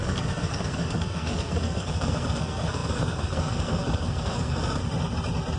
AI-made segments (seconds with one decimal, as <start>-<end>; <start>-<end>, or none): 0.0-4.8